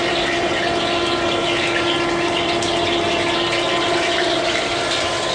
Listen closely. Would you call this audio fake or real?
real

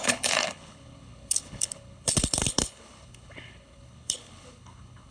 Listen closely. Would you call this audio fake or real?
fake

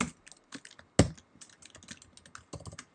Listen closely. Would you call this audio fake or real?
real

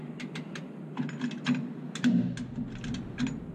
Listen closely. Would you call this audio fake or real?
real